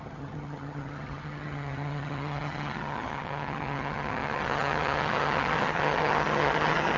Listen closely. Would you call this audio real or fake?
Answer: fake